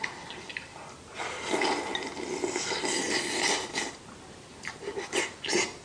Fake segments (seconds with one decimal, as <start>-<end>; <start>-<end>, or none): 0.0-1.9